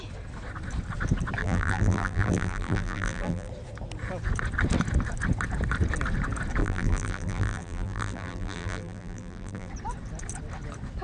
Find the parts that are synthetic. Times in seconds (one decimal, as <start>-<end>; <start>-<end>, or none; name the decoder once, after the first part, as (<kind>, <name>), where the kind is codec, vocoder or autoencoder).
1.4-3.5 (vocoder, BigVGAN v2); 6.6-9.7